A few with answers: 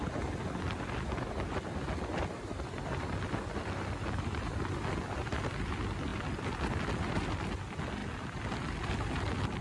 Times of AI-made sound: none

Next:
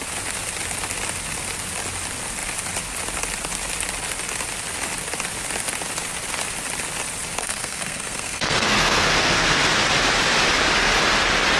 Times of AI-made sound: 7.4-9.6 (codec, SNAC)

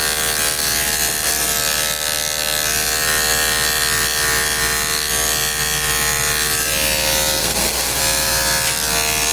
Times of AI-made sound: 7.4-8.0 (codec, SNAC)